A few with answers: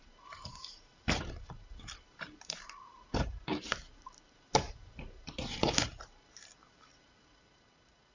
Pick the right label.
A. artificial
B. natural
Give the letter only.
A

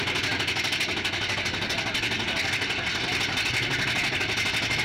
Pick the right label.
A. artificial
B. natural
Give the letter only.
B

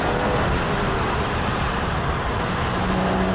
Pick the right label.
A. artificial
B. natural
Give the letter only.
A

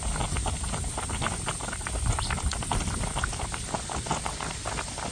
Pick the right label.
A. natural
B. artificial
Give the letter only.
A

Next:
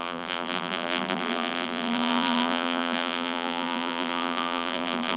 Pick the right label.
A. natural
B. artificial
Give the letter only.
B